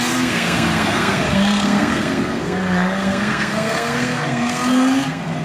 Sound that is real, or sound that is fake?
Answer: fake